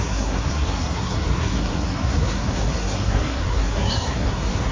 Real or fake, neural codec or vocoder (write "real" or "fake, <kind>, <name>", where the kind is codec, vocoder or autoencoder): fake, codec, SNAC